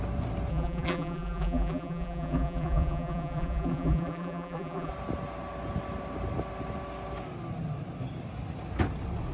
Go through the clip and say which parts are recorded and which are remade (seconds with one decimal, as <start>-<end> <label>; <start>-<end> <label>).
0.0-0.5 recorded; 0.5-4.9 remade; 4.9-9.3 recorded